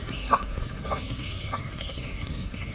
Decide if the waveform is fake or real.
fake